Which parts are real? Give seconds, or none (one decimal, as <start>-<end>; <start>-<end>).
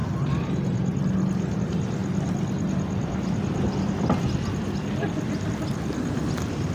0.0-6.7